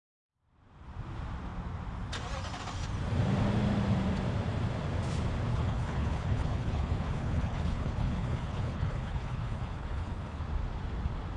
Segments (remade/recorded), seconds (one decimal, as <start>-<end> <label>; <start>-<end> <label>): 0.0-5.5 recorded; 5.5-10.4 remade; 10.4-11.4 recorded